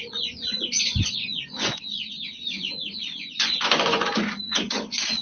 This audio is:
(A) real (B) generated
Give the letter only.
B